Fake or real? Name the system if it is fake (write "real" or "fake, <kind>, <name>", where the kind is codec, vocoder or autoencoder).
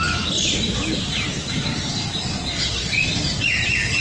real